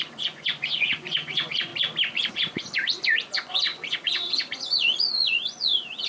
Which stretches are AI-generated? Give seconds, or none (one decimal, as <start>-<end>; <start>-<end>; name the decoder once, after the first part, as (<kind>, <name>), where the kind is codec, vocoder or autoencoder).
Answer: 0.0-1.7 (vocoder, Vocos); 2.3-6.1